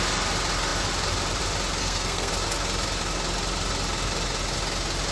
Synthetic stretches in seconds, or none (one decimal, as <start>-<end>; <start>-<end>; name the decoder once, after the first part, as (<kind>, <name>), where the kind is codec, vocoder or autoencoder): 1.8-2.3 (codec, SNAC)